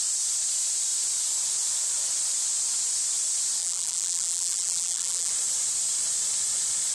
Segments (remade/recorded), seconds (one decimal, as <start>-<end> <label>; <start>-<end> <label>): 0.0-3.6 recorded; 3.6-5.3 remade; 5.3-6.9 recorded